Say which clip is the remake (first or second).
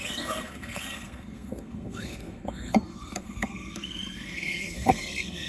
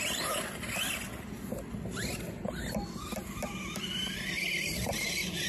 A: first